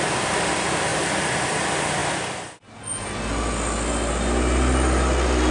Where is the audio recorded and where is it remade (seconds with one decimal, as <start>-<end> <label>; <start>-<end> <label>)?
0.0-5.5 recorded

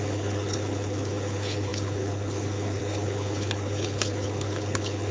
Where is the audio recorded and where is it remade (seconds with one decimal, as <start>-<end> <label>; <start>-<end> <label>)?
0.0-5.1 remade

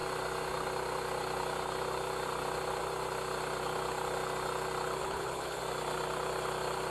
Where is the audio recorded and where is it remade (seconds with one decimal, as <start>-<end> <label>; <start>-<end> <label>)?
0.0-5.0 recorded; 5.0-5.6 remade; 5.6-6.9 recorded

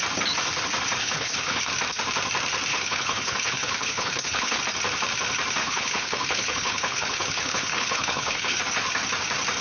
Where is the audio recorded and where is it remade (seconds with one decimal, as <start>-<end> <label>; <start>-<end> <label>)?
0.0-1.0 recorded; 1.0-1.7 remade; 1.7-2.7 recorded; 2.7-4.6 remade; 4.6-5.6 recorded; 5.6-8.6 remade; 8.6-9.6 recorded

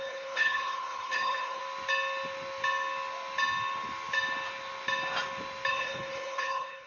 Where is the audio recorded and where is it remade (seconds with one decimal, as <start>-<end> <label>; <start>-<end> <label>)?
0.0-1.6 remade; 1.6-5.7 recorded; 5.7-6.9 remade

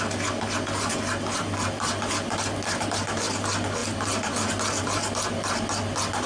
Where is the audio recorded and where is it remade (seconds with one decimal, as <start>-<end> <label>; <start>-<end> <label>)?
0.0-6.3 recorded